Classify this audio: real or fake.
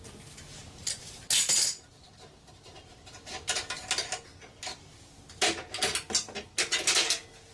real